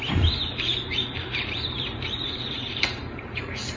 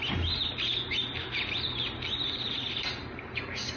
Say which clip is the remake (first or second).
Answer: first